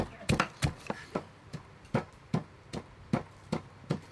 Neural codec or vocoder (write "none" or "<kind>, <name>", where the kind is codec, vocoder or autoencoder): none